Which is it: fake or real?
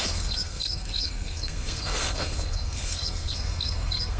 fake